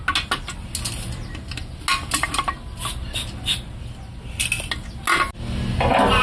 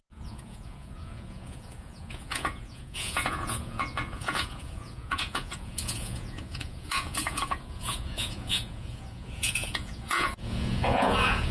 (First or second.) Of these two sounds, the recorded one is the first